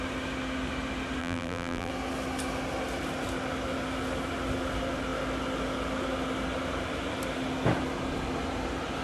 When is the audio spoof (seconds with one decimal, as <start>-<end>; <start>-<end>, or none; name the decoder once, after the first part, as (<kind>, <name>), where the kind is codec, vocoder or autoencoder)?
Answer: 1.2-1.9 (vocoder, BigVGAN v2)